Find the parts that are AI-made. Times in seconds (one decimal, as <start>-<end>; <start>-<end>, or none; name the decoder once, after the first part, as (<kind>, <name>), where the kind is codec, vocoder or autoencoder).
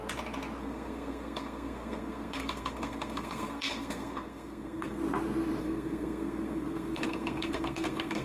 0.6-5.0 (codec, SNAC); 5.6-8.2